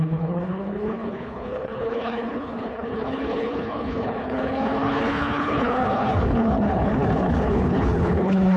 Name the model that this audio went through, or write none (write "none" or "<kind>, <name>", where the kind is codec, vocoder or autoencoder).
codec, HILCodec